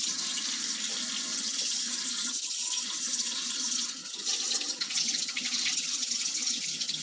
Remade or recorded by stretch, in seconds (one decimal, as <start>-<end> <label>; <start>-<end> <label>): 0.0-0.4 remade; 0.4-1.2 recorded; 1.2-7.0 remade